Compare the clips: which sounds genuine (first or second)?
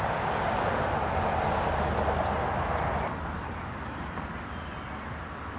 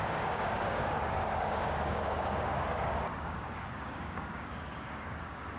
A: first